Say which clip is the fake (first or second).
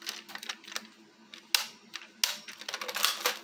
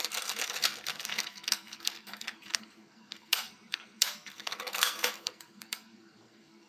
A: second